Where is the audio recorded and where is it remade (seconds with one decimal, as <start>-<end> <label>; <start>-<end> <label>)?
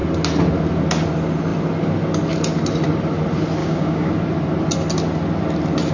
0.0-3.6 recorded; 3.6-4.1 remade; 4.1-5.9 recorded